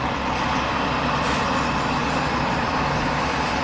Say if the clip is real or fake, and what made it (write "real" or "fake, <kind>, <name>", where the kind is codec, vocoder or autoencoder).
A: fake, vocoder, BigVGAN v2